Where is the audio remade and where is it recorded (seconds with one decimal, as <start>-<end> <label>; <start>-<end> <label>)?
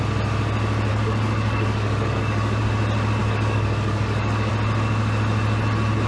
0.0-0.9 recorded; 0.9-2.6 remade; 2.6-3.2 recorded; 3.2-4.5 remade; 4.5-6.1 recorded